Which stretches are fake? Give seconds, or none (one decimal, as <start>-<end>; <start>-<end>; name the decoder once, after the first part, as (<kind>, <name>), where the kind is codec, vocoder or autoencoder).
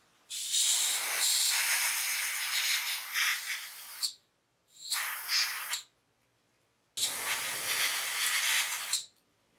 3.3-4.8 (vocoder, BigVGAN v2)